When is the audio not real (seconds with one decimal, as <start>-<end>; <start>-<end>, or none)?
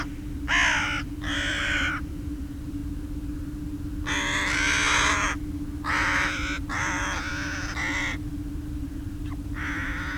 0.0-2.8; 5.9-10.2